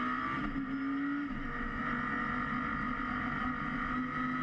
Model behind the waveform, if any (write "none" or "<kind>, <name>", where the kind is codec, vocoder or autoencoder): none